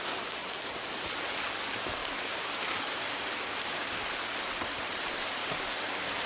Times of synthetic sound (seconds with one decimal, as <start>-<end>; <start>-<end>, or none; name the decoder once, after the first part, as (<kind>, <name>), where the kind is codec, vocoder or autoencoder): 2.0-5.8 (vocoder, BigVGAN v2)